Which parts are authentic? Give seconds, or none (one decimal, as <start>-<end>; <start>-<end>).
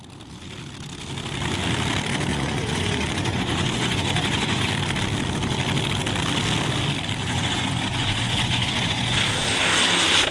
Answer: 0.0-2.3; 4.7-7.2; 9.2-10.3